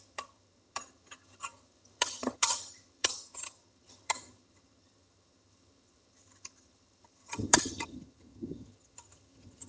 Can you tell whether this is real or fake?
fake